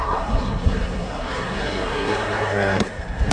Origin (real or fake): fake